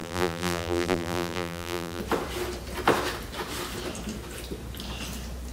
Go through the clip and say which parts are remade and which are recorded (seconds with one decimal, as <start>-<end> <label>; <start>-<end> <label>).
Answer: 0.0-2.0 remade; 2.0-5.5 recorded